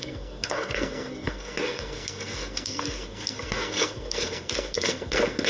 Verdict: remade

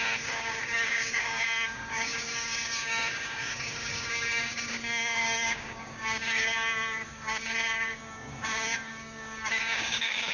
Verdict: remade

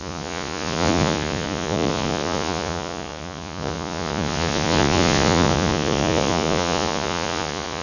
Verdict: remade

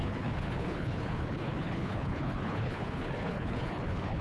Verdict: remade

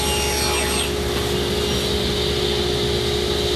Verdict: recorded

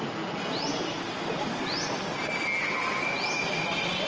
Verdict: recorded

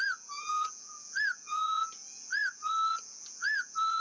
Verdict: remade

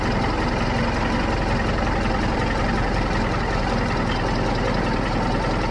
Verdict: recorded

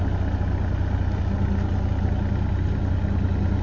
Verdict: recorded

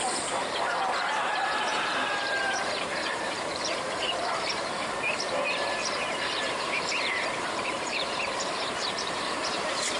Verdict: remade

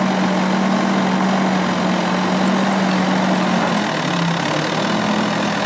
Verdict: recorded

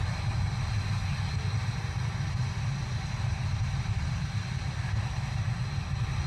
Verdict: recorded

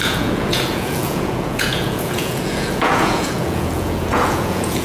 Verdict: remade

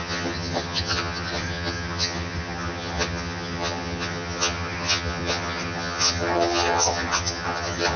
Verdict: remade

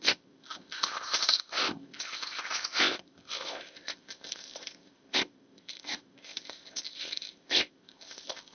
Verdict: remade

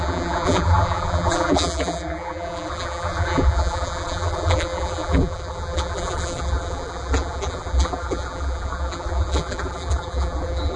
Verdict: remade